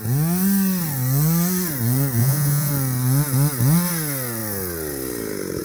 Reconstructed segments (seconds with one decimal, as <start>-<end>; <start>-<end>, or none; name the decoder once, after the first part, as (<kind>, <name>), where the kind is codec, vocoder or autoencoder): 2.2-2.7 (vocoder, Vocos)